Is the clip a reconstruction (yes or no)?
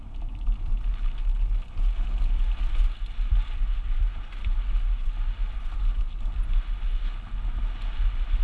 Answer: no